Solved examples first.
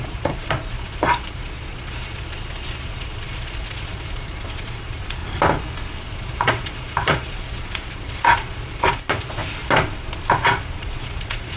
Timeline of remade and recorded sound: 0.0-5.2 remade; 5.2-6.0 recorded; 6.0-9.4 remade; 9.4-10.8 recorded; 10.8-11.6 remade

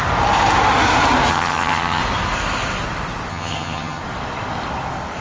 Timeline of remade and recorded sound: 0.0-1.3 recorded; 1.3-2.0 remade; 2.0-3.3 recorded; 3.3-4.0 remade; 4.0-5.2 recorded

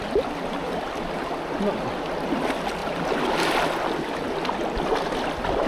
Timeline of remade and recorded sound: 0.0-2.8 recorded; 2.8-3.5 remade; 3.5-5.7 recorded